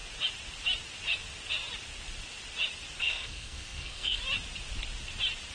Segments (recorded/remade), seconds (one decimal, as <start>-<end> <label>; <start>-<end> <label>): 0.0-3.0 recorded; 3.0-4.2 remade; 4.2-5.5 recorded